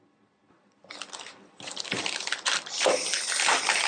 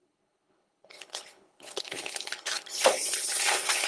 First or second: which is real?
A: first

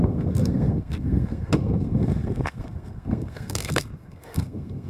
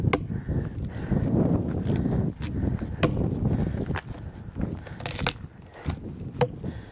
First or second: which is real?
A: second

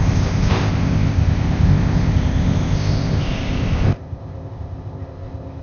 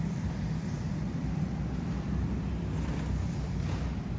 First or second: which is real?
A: second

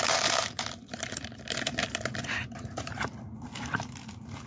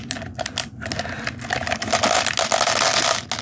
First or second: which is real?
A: second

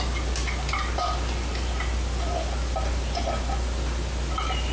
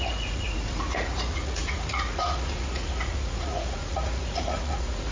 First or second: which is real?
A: first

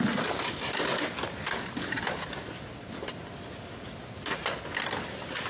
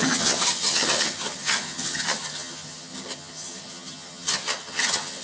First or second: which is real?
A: first